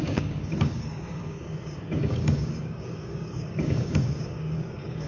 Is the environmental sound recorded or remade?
remade